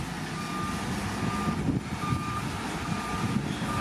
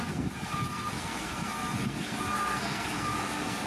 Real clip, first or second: first